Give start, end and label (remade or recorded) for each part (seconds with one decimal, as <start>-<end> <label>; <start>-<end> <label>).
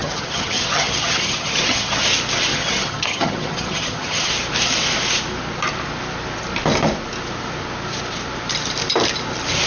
0.0-2.0 remade; 2.0-2.5 recorded; 2.5-4.3 remade; 4.3-9.7 recorded